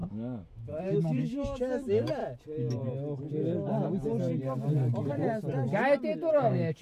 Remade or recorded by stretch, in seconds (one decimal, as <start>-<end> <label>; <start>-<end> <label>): 0.0-2.2 remade; 2.2-6.3 recorded; 6.3-6.8 remade